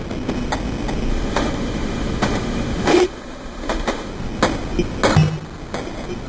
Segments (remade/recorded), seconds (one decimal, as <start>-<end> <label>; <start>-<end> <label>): 0.0-1.1 recorded; 1.1-4.1 remade; 4.1-6.3 recorded